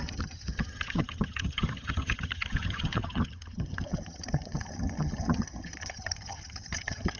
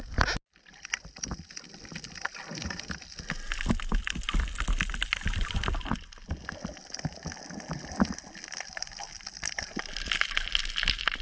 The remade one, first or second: first